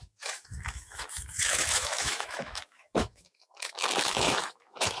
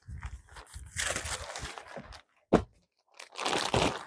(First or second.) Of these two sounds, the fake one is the first